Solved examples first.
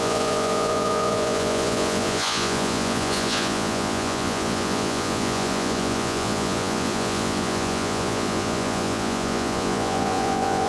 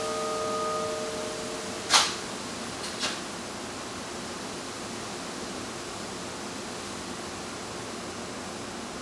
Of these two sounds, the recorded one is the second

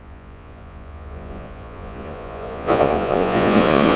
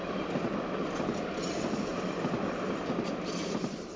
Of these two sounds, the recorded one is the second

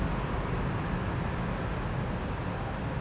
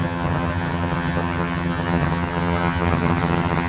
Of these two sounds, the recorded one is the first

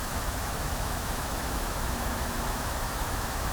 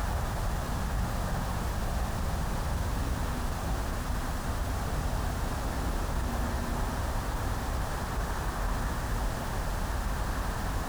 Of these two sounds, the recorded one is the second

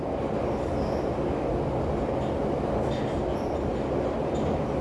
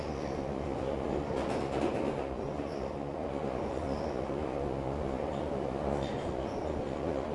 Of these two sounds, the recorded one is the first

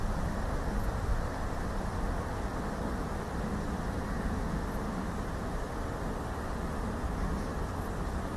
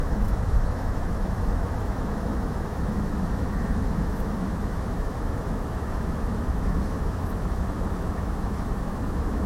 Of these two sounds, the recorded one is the first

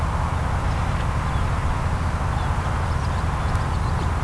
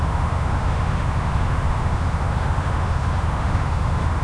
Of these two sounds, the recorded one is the first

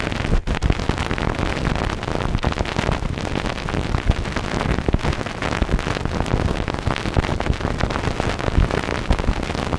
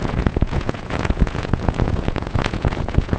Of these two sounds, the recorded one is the first